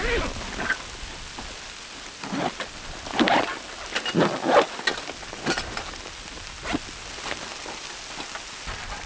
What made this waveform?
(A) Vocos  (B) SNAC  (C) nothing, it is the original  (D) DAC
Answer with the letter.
C